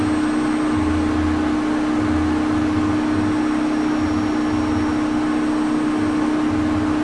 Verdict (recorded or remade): recorded